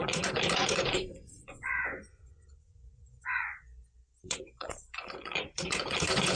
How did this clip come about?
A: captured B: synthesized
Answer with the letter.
B